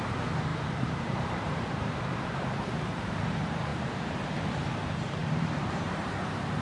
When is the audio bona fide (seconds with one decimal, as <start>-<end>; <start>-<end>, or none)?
0.0-0.5; 3.2-3.7; 4.5-5.2; 5.9-6.6